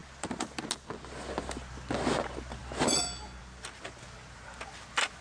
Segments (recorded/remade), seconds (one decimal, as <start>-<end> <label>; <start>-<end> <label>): 0.0-5.2 recorded